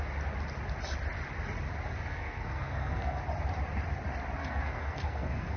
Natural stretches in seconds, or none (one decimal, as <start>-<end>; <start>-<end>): 0.0-2.1; 3.2-4.4